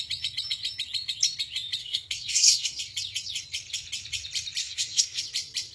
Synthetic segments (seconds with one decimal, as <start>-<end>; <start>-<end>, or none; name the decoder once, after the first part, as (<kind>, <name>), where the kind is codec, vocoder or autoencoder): 1.8-2.8 (codec, SNAC); 4.6-5.2

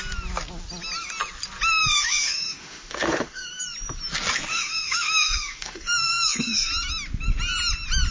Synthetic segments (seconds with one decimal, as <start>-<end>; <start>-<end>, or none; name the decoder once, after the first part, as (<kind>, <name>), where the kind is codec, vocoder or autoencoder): 1.8-3.5 (autoencoder, DAC-VAE); 4.5-6.7